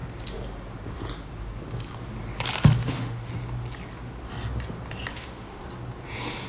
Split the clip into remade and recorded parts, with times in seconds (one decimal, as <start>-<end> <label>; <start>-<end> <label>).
0.0-2.8 recorded; 2.8-3.3 remade; 3.3-5.1 recorded; 5.1-5.6 remade; 5.6-6.5 recorded